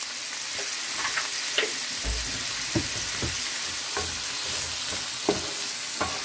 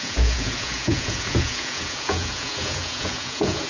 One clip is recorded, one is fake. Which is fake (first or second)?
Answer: second